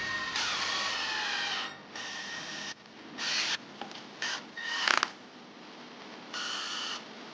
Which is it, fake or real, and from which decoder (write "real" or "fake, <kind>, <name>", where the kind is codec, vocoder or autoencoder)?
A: real